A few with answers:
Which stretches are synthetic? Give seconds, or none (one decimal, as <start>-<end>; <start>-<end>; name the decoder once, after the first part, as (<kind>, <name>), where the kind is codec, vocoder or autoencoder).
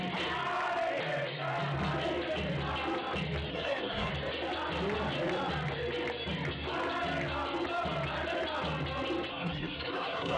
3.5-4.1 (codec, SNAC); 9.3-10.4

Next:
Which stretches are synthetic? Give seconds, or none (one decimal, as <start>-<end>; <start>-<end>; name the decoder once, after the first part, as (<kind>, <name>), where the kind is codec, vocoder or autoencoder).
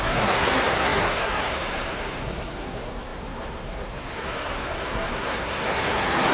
0.0-6.3 (codec, SNAC)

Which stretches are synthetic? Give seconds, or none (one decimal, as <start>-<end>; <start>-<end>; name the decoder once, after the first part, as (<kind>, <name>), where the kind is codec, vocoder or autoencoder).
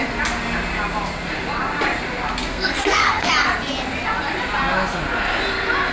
2.5-3.3 (codec, SNAC)